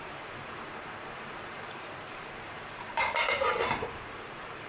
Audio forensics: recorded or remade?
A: remade